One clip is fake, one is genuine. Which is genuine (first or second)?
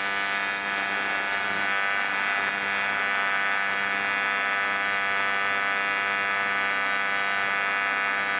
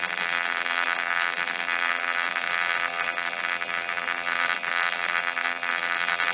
first